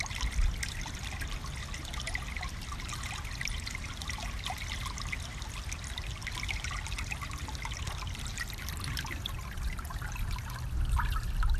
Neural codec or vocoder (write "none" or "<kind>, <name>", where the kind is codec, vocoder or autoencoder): none